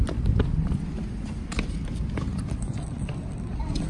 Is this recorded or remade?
recorded